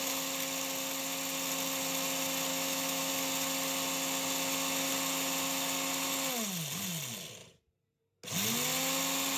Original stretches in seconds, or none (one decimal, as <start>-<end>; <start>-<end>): 0.0-2.5; 3.1-9.4